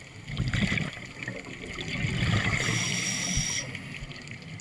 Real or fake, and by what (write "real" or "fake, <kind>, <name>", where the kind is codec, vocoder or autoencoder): real